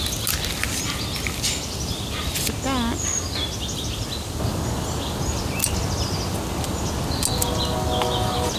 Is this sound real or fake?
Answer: real